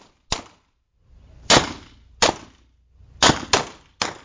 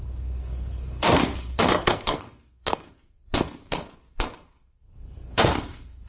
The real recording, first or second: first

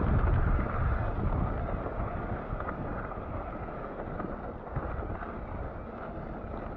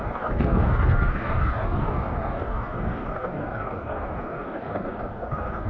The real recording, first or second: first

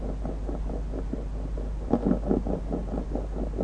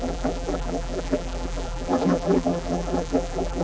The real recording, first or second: first